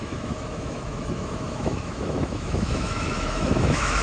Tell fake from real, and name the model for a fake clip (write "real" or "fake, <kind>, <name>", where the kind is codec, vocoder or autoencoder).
fake, autoencoder, DAC-VAE